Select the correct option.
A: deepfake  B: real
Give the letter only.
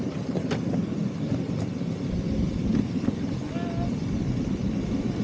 B